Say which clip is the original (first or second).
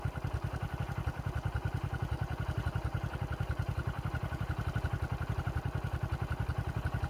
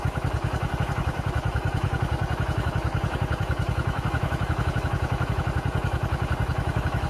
first